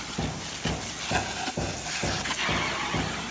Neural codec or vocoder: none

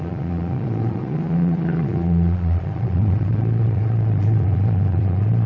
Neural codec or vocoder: vocoder, Vocos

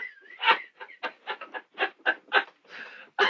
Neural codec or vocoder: none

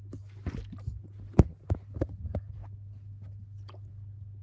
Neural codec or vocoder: none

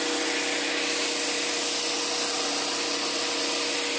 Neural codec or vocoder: none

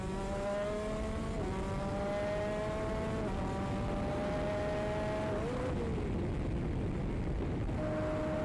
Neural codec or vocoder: none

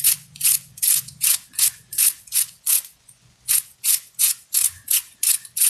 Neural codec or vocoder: vocoder, Vocos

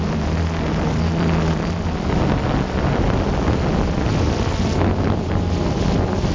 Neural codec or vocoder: none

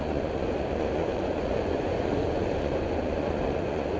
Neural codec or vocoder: vocoder, Vocos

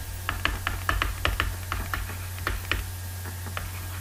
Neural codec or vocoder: none